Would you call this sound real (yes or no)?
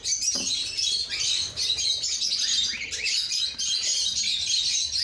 yes